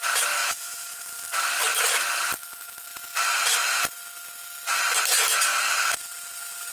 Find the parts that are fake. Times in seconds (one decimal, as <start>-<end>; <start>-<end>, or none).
0.4-1.0